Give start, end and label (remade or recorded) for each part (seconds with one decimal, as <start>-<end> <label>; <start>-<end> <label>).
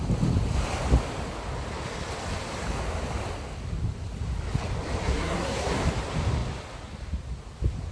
0.0-5.0 recorded; 5.0-5.7 remade; 5.7-7.9 recorded